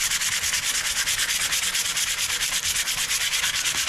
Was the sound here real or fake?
real